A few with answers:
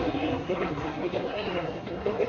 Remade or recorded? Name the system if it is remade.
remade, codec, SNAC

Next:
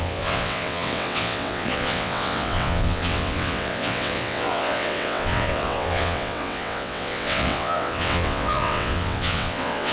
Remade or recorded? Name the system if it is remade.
remade, vocoder, WaveNeXt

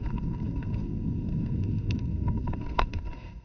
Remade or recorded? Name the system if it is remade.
remade, codec, SNAC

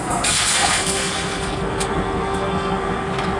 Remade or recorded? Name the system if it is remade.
remade, codec, SNAC